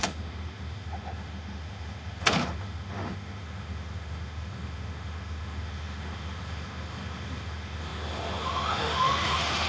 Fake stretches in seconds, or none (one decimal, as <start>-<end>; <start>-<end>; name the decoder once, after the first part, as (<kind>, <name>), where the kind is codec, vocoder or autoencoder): 0.0-9.7 (autoencoder, DAC-VAE)